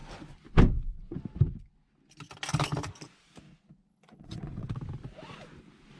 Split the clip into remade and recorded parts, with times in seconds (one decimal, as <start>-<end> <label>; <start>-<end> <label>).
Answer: 0.0-3.9 recorded; 3.9-4.8 remade; 4.8-6.0 recorded